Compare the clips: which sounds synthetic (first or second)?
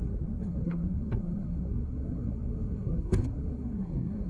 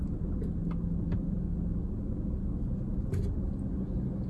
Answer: first